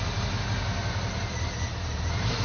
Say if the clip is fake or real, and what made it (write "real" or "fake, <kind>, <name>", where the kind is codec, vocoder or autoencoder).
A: real